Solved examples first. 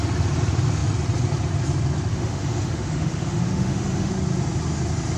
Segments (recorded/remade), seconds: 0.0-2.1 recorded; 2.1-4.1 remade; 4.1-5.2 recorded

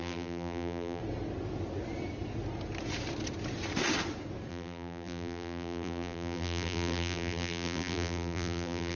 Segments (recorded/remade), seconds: 0.0-1.0 remade; 1.0-4.5 recorded; 4.5-8.9 remade

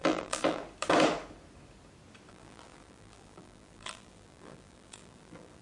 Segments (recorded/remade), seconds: 0.0-0.6 remade; 0.6-2.3 recorded; 2.3-5.6 remade

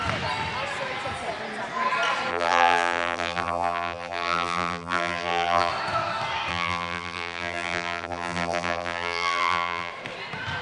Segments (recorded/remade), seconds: 0.0-2.3 recorded; 2.3-5.7 remade; 5.7-6.5 recorded; 6.5-9.9 remade; 9.9-10.6 recorded